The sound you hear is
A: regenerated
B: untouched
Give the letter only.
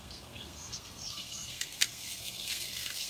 A